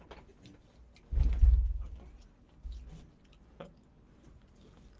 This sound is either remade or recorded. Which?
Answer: recorded